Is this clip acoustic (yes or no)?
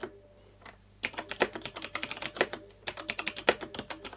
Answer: yes